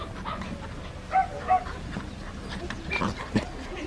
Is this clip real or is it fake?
real